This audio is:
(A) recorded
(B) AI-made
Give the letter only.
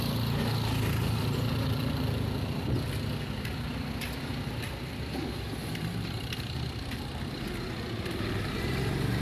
A